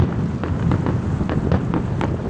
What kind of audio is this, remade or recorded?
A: recorded